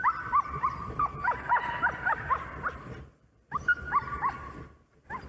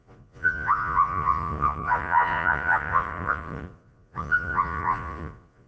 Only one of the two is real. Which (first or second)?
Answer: first